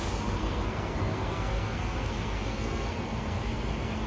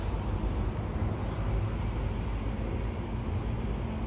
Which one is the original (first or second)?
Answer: second